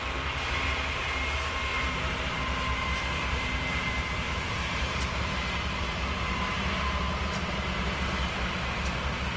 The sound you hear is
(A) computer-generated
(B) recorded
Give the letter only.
A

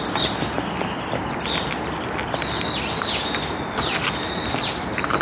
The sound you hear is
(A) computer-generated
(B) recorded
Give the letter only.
B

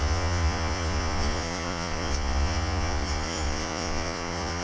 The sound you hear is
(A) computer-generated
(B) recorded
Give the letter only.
A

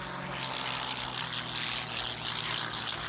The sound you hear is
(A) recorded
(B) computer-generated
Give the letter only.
A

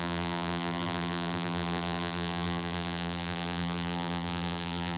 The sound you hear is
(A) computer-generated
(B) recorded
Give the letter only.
A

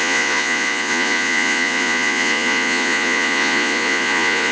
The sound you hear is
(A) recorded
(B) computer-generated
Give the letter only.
B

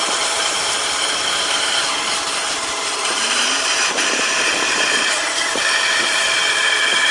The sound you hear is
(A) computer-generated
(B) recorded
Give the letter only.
A